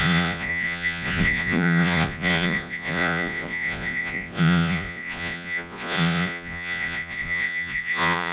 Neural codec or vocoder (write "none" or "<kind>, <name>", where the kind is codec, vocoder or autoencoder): vocoder, Vocos